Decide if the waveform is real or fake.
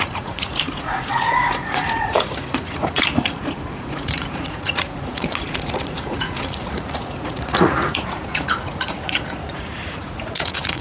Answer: fake